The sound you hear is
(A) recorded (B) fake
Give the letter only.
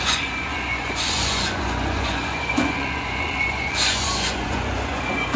B